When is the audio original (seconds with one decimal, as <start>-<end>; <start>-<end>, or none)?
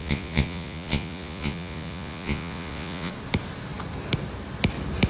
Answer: 3.1-5.1